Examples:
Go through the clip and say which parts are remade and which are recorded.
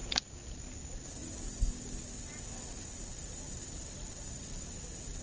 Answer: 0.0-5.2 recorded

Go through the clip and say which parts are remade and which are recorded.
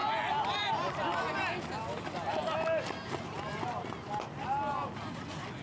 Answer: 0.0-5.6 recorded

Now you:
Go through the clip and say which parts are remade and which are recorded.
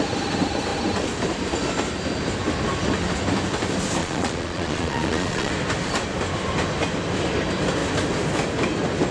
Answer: 0.0-4.0 recorded; 4.0-5.5 remade; 5.5-9.1 recorded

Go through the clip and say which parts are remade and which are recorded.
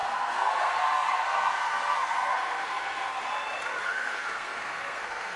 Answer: 0.0-3.2 remade; 3.2-3.8 recorded; 3.8-5.4 remade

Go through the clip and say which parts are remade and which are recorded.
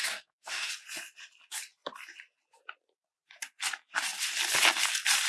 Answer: 0.0-0.7 remade; 0.7-5.3 recorded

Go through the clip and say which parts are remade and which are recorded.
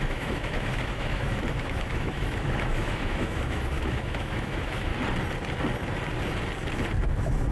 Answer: 0.0-4.9 remade; 4.9-7.1 recorded; 7.1-7.5 remade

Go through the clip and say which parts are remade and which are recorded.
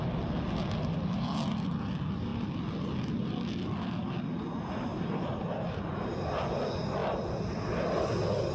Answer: 0.0-2.3 recorded; 2.3-3.3 remade; 3.3-4.9 recorded; 4.9-5.5 remade; 5.5-7.0 recorded; 7.0-7.6 remade; 7.6-8.5 recorded